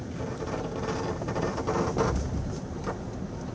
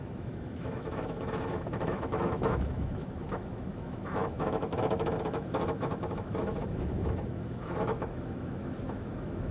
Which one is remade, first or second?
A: second